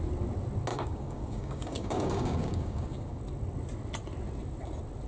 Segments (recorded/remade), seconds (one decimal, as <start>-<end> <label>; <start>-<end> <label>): 0.0-0.7 recorded; 0.7-3.2 remade; 3.2-5.1 recorded